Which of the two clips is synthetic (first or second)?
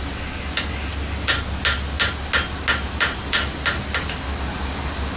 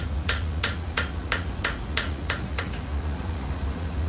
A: second